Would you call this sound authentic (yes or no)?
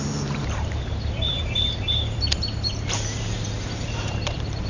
no